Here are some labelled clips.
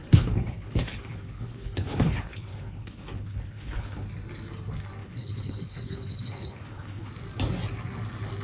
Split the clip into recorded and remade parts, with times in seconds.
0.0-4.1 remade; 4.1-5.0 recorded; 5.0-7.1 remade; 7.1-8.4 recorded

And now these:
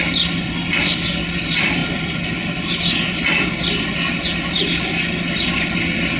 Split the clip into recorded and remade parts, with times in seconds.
0.0-6.2 recorded